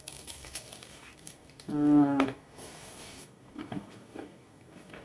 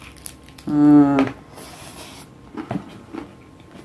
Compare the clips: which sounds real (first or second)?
second